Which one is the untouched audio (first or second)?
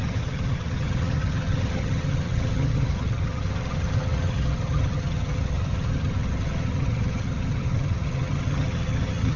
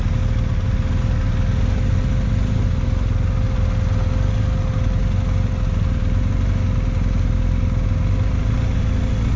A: second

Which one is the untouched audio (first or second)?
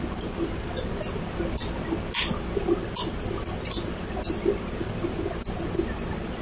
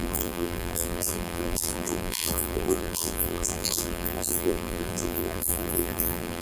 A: first